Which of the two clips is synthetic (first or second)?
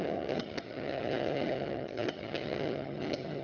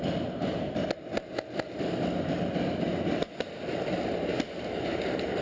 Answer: first